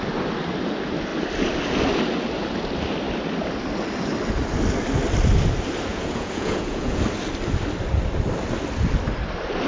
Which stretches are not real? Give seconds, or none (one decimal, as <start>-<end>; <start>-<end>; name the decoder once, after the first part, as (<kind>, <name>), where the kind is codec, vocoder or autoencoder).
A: 5.9-7.0 (vocoder, Vocos)